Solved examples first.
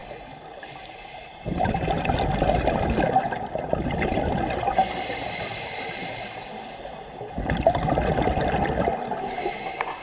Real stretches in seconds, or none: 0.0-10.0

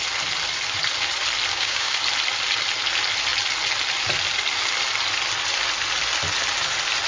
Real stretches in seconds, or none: 0.0-1.5; 2.0-7.1

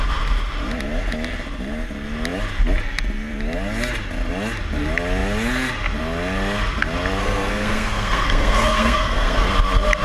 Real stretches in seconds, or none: 0.0-7.2; 9.5-10.0

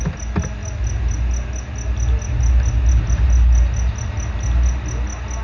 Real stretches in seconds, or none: 0.0-5.4